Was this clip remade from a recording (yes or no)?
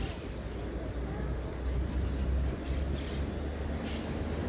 no